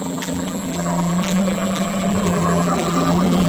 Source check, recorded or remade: remade